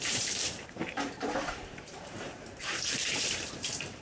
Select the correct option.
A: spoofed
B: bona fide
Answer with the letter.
A